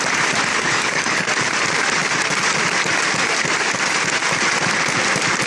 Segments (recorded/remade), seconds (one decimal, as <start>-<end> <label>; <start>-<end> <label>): 0.0-0.5 recorded; 0.5-1.3 remade; 1.3-5.5 recorded